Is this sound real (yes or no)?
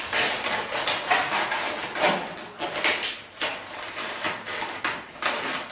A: yes